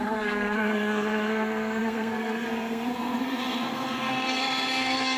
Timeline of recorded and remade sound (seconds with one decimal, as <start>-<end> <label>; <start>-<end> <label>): 0.0-5.2 remade